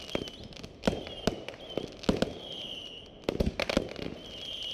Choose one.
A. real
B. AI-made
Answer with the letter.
A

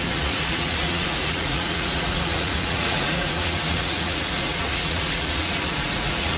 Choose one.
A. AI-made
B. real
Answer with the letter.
A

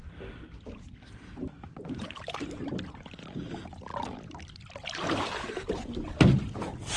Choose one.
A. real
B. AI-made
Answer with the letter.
A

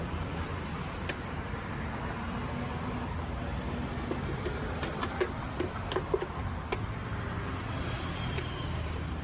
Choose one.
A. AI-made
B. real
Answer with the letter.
A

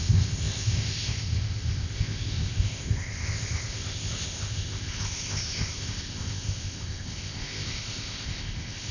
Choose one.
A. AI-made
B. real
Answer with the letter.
A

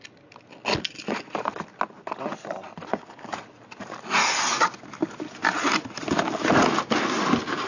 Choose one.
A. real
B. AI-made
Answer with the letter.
A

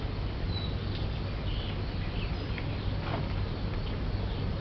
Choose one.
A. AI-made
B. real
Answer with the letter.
B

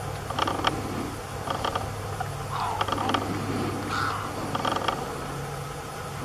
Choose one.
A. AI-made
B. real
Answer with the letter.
B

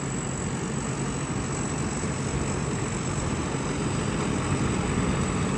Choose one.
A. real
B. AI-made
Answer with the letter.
A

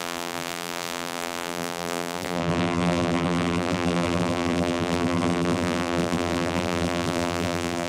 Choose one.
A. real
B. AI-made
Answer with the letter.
B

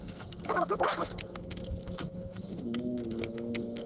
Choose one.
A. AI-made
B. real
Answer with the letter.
A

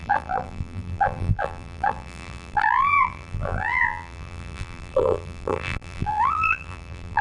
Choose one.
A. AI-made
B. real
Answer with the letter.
A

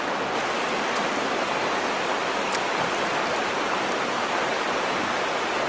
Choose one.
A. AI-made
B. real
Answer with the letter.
B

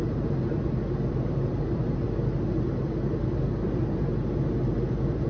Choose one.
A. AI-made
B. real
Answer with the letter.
B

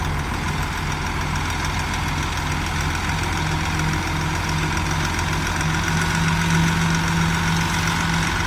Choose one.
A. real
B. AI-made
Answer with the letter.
A